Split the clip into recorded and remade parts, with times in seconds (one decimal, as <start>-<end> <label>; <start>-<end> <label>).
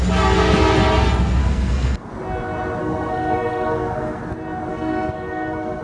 0.0-1.4 recorded; 1.4-2.1 remade; 2.1-2.8 recorded; 2.8-4.2 remade; 4.2-4.7 recorded; 4.7-5.8 remade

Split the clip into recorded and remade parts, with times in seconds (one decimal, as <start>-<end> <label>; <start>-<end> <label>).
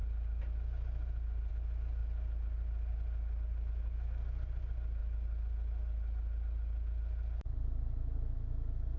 0.0-9.0 recorded